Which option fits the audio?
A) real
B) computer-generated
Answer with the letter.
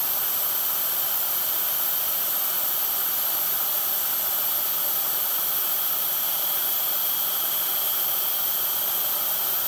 A